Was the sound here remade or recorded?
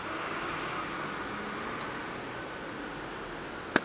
recorded